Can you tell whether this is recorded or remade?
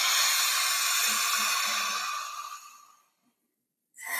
recorded